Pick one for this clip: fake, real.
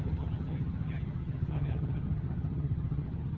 fake